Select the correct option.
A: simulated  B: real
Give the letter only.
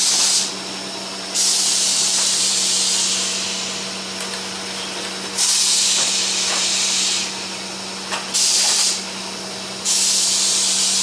B